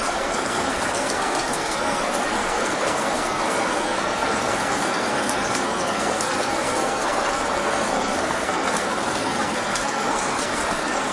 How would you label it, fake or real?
fake